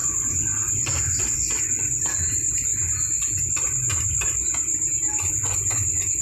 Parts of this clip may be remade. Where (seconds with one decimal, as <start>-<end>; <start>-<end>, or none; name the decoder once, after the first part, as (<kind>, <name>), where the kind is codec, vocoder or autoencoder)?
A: 1.2-2.7 (vocoder, BigVGAN v2); 3.4-6.2